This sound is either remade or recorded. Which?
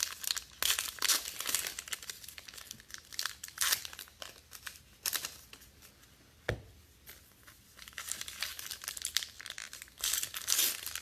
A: recorded